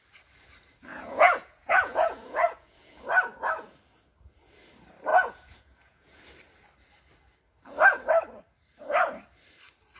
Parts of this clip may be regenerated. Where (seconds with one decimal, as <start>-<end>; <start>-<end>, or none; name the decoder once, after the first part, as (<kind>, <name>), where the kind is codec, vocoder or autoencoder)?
0.9-3.0 (vocoder, Vocos); 5.1-6.2